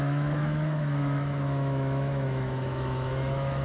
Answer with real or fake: fake